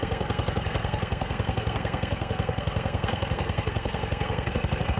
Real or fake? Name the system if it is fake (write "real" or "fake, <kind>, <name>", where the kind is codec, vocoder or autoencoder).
fake, codec, SNAC